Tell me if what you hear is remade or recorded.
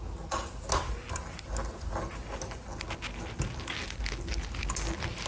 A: recorded